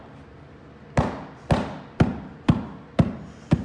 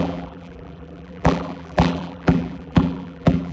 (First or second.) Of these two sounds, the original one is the first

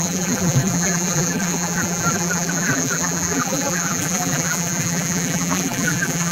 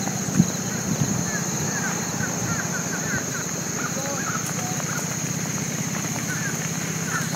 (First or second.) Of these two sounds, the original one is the second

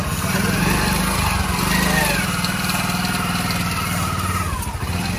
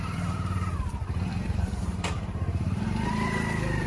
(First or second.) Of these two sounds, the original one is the first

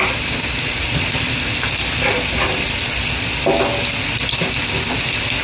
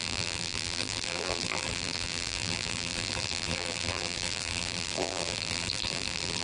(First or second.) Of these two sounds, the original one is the first